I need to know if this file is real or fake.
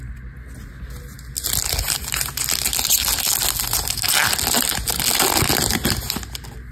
real